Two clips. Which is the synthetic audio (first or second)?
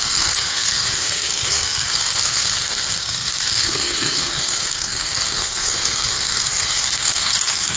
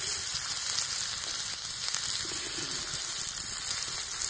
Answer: first